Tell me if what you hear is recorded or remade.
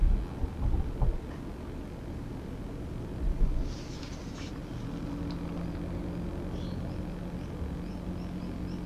recorded